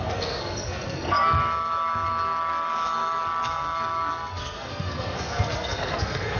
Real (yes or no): no